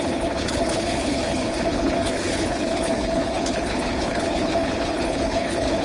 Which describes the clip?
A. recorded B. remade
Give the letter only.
B